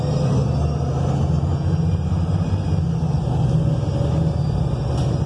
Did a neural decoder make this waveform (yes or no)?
no